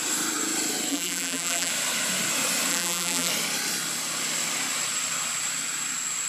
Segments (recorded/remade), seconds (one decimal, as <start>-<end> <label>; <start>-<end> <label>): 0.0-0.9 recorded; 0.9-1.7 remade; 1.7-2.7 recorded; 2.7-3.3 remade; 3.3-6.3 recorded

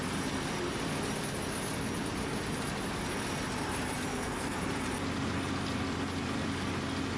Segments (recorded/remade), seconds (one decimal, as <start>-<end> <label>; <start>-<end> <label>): 0.0-4.1 recorded; 4.1-4.6 remade; 4.6-7.2 recorded

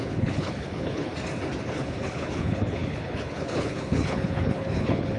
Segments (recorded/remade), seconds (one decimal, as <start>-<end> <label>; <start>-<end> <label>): 0.0-1.1 remade; 1.1-1.7 recorded; 1.7-5.2 remade

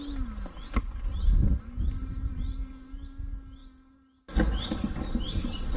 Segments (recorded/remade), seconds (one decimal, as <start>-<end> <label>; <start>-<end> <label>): 0.0-2.0 recorded; 2.0-2.7 remade; 2.7-5.8 recorded